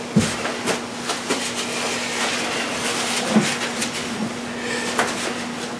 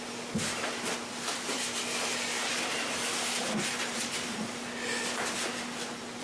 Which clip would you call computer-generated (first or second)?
second